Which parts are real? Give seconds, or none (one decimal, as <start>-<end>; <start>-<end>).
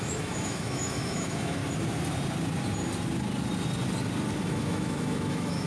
1.6-4.4